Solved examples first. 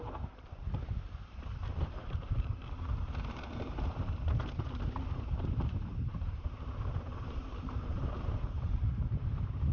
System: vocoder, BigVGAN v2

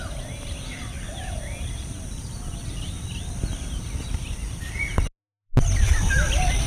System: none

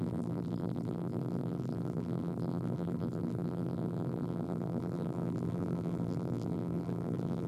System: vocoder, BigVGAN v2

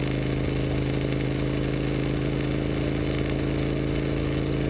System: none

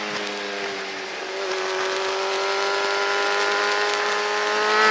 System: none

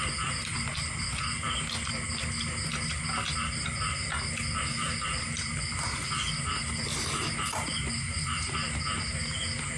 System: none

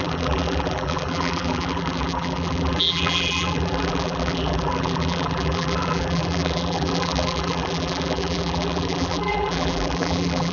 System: vocoder, BigVGAN v2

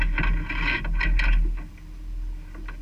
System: none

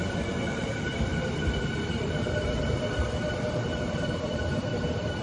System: vocoder, BigVGAN v2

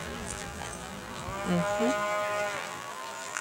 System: vocoder, BigVGAN v2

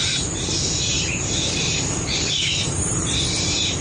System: vocoder, BigVGAN v2